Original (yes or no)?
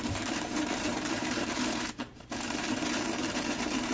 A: no